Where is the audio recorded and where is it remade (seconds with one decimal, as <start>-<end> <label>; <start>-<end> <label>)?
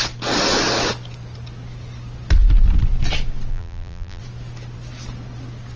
0.0-3.5 recorded; 3.5-4.2 remade; 4.2-5.8 recorded